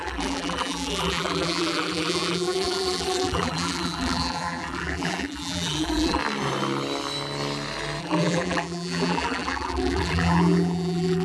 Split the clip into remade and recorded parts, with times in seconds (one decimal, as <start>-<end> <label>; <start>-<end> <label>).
0.0-6.2 remade; 6.2-8.0 recorded; 8.0-11.2 remade